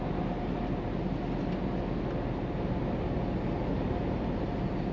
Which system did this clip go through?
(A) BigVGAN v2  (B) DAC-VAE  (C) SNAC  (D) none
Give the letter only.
D